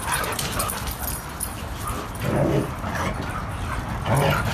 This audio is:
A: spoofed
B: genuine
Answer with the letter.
B